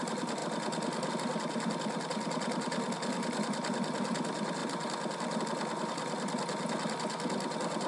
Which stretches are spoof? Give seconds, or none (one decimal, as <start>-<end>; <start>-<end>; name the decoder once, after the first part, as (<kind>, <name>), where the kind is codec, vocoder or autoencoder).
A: none